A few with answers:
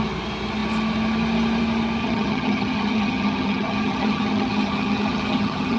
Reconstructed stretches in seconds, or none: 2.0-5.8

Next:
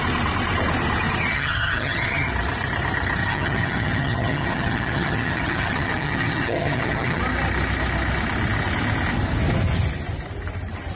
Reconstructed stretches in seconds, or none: 1.3-2.3; 3.2-7.2